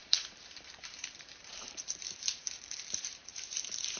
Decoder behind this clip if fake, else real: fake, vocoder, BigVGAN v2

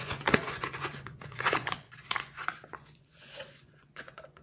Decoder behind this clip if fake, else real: fake, vocoder, Vocos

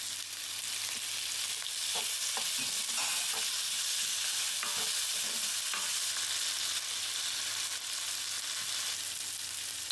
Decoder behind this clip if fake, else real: real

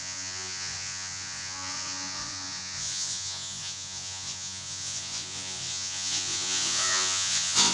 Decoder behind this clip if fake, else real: fake, vocoder, Vocos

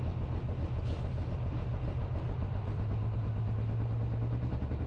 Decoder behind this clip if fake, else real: real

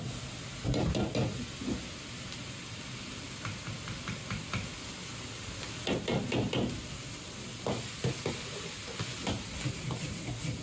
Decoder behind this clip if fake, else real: real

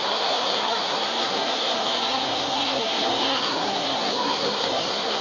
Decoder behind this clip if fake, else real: fake, codec, SNAC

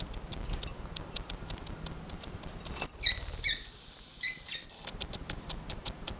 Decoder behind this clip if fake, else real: real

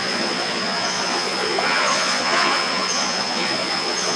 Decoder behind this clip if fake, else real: fake, vocoder, Vocos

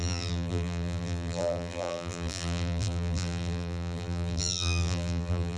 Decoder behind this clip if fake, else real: fake, vocoder, BigVGAN v2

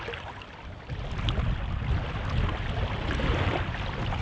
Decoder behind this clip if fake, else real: real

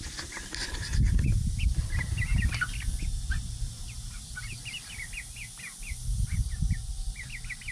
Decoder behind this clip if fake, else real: real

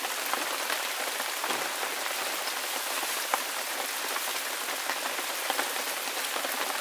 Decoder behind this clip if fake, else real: real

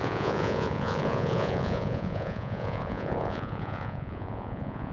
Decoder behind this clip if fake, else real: fake, vocoder, Vocos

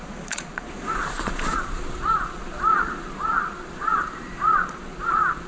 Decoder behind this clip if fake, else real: fake, vocoder, Vocos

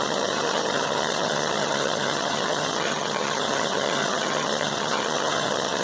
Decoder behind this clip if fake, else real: fake, vocoder, HiFi-GAN